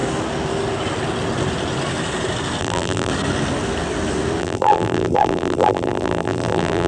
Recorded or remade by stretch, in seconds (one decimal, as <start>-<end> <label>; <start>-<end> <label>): 0.0-2.6 recorded; 2.6-3.1 remade; 3.1-4.4 recorded; 4.4-6.9 remade